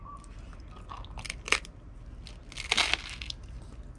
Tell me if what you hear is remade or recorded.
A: recorded